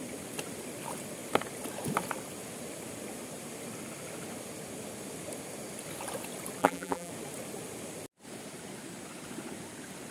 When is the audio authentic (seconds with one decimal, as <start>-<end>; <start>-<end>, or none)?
0.0-6.6; 7.1-10.1